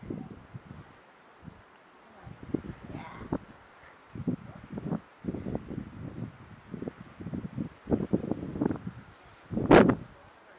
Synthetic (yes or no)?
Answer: no